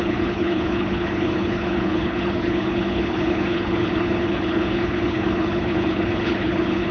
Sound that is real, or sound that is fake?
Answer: fake